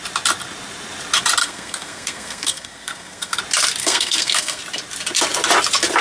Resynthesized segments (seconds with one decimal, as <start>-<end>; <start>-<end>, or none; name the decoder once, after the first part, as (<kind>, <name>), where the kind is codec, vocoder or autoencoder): 1.4-3.4 (codec, SNAC); 3.8-4.6